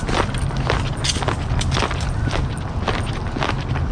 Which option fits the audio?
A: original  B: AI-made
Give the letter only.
A